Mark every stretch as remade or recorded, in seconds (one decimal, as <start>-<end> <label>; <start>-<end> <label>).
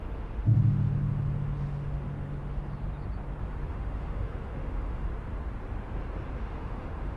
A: 0.0-2.6 remade; 2.6-3.7 recorded; 3.7-5.1 remade; 5.1-6.4 recorded; 6.4-7.2 remade